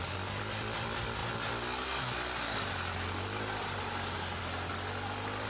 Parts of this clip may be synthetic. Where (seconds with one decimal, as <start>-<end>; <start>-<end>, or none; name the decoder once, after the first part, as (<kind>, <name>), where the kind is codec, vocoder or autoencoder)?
none